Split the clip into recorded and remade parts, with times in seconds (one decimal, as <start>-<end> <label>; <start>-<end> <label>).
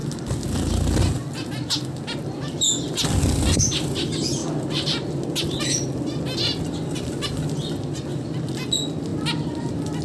0.0-10.0 recorded